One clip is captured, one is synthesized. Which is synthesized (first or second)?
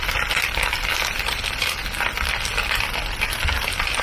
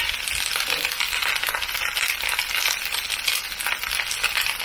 first